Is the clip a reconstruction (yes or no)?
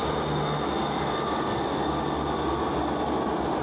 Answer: no